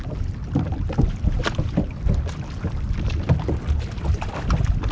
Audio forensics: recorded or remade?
recorded